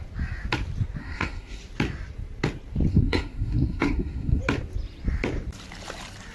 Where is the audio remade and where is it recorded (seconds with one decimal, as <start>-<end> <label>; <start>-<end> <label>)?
0.0-1.0 recorded; 1.0-1.6 remade; 1.6-2.9 recorded; 2.9-4.4 remade; 4.4-6.3 recorded